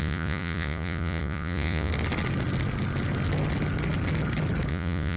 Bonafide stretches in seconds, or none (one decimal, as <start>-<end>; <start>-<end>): 1.9-4.7